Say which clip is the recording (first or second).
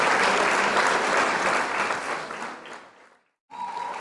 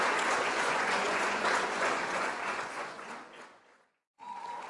first